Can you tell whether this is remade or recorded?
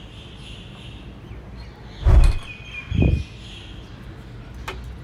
recorded